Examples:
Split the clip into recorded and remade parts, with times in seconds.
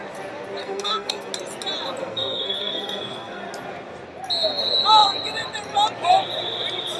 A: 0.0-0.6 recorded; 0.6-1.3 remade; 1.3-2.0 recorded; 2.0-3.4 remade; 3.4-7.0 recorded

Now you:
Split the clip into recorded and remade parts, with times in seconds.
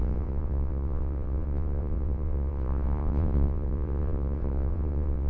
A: 0.0-5.3 remade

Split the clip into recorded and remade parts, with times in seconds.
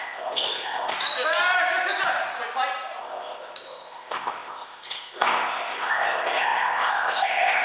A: 0.0-0.9 remade; 0.9-3.0 recorded; 3.0-7.6 remade